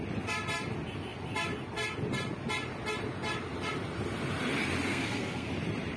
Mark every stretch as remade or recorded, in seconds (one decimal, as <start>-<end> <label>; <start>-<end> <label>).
0.0-4.9 recorded; 4.9-5.5 remade; 5.5-6.0 recorded